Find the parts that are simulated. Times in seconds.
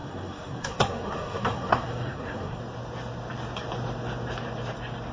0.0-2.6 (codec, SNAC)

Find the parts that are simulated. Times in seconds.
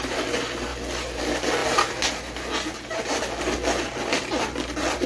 none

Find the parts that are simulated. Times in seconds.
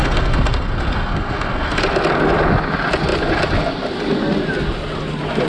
0.0-1.8 (codec, SNAC)